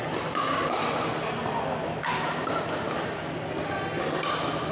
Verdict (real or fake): real